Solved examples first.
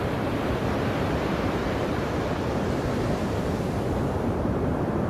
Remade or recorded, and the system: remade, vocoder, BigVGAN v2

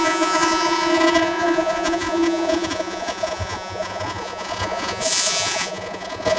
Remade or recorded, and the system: remade, vocoder, Vocos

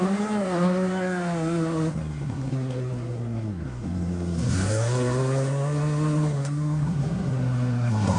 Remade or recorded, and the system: remade, codec, SNAC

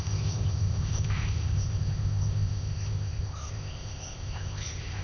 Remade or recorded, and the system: remade, codec, ZipCodec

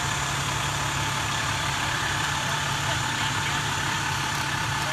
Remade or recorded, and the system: remade, vocoder, BigVGAN v2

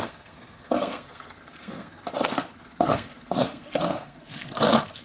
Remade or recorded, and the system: remade, codec, SNAC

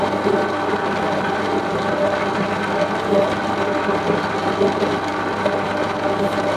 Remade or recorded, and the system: recorded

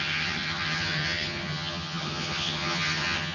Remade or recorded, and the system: remade, vocoder, HiFi-GAN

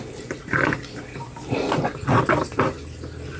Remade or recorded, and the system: recorded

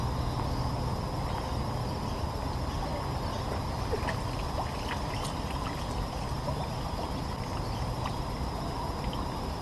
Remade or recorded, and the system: recorded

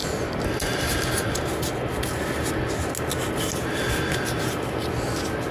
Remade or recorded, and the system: recorded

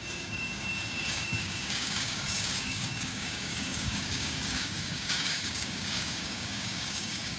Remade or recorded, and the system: remade, codec, DAC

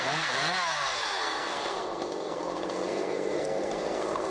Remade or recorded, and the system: remade, codec, SNAC